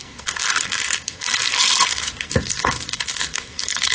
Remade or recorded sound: remade